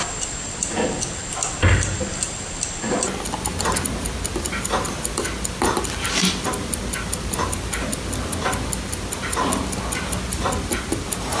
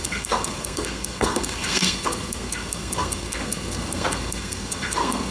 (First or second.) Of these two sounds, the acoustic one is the first